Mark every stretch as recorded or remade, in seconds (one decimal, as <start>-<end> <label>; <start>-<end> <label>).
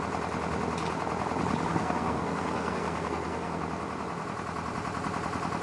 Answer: 0.0-1.7 recorded; 1.7-3.6 remade; 3.6-5.6 recorded